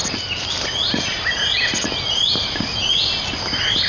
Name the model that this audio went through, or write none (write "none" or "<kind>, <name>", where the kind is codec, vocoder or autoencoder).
none